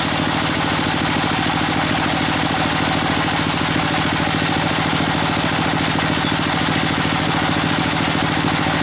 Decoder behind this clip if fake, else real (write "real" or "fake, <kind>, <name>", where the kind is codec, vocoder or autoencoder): real